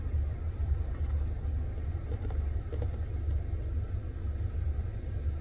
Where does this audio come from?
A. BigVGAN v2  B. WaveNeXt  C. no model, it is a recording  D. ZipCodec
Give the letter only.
C